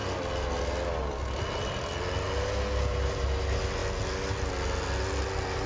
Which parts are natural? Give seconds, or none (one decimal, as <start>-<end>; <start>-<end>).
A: 0.0-5.7

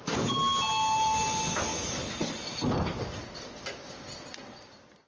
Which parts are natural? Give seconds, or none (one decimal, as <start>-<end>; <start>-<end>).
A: 0.0-5.1

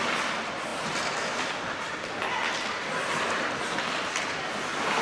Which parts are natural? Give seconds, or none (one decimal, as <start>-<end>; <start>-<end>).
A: 0.0-5.0

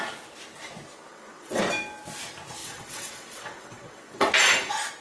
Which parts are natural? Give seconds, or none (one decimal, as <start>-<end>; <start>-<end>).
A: 0.0-1.1; 1.6-2.6; 4.3-5.0